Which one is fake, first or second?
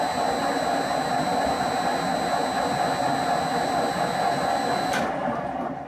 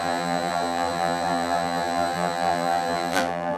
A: second